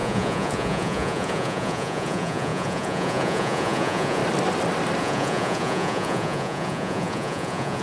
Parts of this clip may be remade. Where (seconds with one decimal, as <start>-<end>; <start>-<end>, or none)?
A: 0.0-4.2; 5.0-7.8

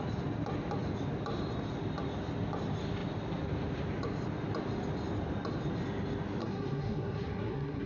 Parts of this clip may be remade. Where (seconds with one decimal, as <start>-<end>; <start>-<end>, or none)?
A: 6.4-7.9

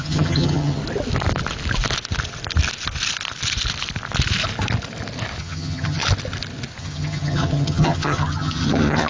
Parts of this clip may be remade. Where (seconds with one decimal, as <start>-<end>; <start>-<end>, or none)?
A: 0.0-0.8; 5.4-6.0; 6.8-9.1

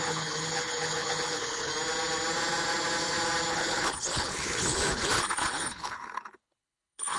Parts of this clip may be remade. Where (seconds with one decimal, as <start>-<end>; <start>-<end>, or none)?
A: 0.0-1.7; 3.5-7.2